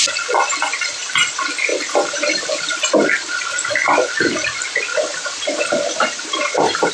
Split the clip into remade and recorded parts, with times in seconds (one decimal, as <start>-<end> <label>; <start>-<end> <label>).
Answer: 0.0-1.7 recorded; 1.7-2.8 remade; 2.8-4.9 recorded; 4.9-6.9 remade